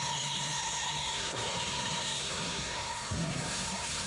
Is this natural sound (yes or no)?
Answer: no